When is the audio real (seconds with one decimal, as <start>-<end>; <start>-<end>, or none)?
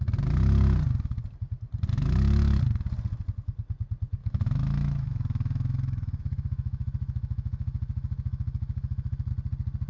0.0-1.9; 2.6-4.2; 9.3-9.9